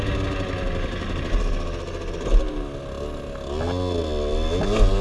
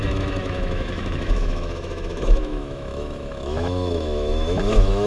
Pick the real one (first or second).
first